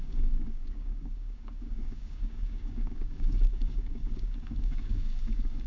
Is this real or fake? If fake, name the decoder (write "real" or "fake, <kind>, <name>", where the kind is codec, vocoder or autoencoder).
fake, codec, DAC